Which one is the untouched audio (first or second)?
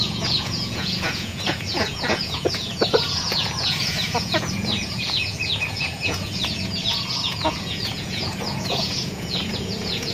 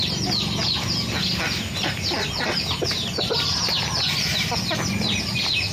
second